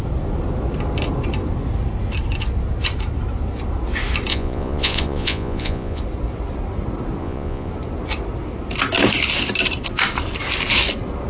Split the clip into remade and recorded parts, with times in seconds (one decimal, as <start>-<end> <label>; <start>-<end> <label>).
0.0-4.3 recorded; 4.3-6.0 remade; 6.0-7.2 recorded; 7.2-7.7 remade; 7.7-11.3 recorded